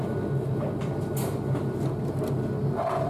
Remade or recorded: recorded